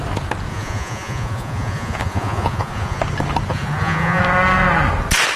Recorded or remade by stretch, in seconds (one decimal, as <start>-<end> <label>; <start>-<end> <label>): 0.0-0.5 recorded; 0.5-3.0 remade; 3.0-3.5 recorded; 3.5-4.2 remade; 4.2-5.4 recorded